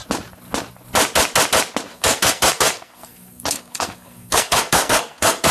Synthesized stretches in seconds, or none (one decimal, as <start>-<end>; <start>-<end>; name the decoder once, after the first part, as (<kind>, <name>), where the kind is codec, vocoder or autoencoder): 1.9-5.5 (codec, SNAC)